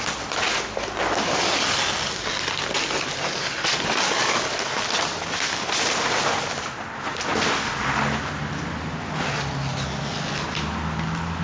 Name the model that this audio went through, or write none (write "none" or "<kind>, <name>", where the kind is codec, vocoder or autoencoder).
none